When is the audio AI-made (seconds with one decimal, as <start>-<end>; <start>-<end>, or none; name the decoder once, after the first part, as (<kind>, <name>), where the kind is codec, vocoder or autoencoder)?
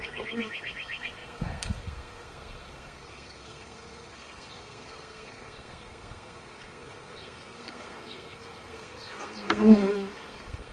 0.0-10.7 (codec, SNAC)